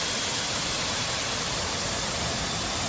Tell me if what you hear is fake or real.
real